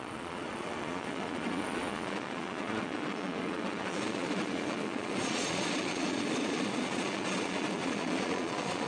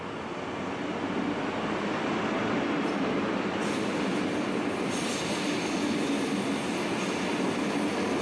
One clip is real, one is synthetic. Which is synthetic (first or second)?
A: first